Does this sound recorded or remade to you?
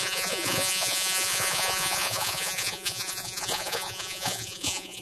remade